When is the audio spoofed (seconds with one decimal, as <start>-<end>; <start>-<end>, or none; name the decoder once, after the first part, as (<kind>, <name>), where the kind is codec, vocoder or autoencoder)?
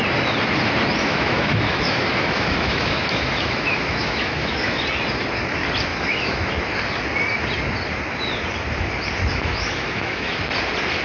1.0-4.8 (autoencoder, DAC-VAE); 5.9-6.5; 9.3-10.4